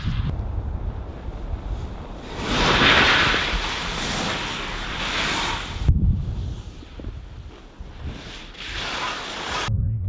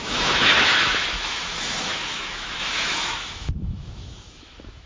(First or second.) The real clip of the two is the first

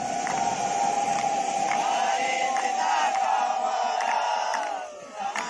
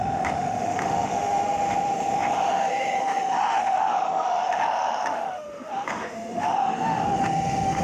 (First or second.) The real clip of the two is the first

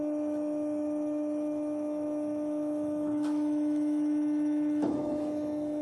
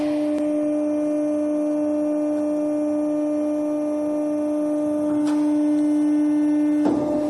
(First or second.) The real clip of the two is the second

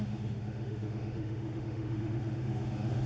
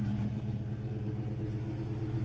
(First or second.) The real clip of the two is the second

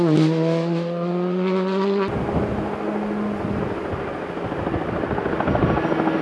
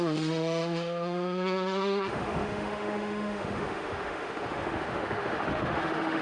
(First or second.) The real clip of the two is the first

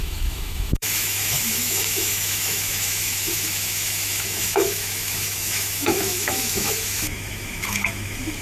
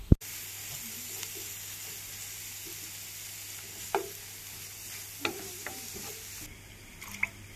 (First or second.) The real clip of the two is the second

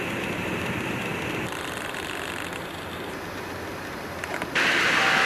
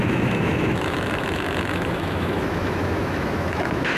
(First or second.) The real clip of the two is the first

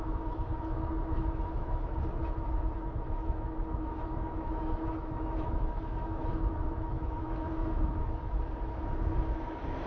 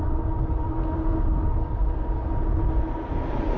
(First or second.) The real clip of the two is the second